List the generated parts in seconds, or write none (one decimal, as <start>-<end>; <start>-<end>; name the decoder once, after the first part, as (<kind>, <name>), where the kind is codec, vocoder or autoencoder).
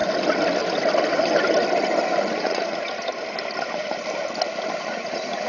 2.4-3.1 (vocoder, Vocos); 4.9-5.5